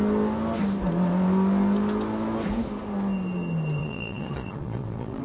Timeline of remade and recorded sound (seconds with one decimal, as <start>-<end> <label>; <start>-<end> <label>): 0.0-3.8 recorded; 3.8-5.2 remade